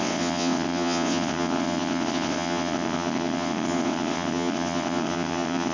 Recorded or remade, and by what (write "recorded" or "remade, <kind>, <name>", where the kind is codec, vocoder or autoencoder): remade, vocoder, WaveNeXt